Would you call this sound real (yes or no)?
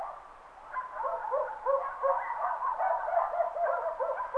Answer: yes